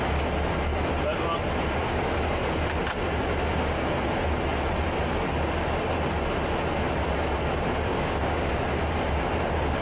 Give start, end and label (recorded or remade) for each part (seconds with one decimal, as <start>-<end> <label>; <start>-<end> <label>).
0.0-7.9 recorded; 7.9-8.6 remade; 8.6-9.8 recorded